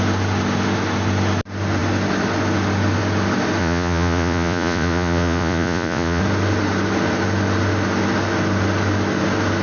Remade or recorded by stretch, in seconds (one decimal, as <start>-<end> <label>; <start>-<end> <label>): 0.0-3.6 recorded; 3.6-6.2 remade; 6.2-9.6 recorded